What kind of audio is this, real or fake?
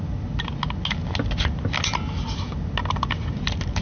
real